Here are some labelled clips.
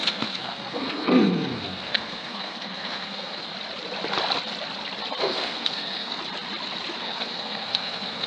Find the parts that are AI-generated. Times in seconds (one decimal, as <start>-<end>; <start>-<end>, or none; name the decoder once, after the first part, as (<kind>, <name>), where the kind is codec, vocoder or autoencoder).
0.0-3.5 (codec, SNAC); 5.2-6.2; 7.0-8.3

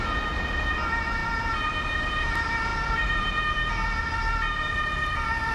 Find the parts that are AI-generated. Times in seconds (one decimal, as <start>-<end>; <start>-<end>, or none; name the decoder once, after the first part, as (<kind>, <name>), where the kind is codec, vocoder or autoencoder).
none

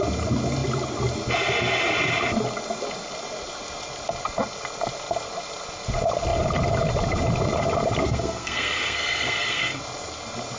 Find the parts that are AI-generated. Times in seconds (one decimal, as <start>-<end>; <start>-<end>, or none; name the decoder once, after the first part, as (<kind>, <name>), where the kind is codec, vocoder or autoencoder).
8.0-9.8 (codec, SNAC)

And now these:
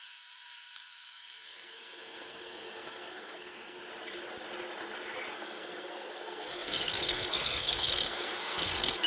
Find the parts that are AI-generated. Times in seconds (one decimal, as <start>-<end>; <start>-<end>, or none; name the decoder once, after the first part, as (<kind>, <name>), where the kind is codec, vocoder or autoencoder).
0.0-3.8 (codec, SNAC); 5.3-9.1

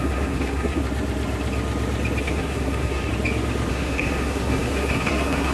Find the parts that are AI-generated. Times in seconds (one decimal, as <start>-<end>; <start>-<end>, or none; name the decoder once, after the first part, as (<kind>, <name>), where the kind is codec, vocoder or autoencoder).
0.0-0.8 (codec, SNAC); 2.2-3.1; 3.7-5.5

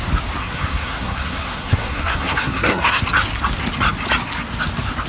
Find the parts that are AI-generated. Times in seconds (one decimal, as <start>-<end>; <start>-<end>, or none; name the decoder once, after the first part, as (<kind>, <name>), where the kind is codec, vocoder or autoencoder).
0.4-3.0 (codec, SNAC)